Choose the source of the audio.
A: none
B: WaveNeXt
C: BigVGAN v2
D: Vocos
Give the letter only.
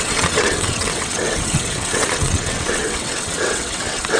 B